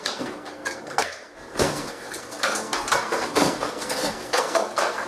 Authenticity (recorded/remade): remade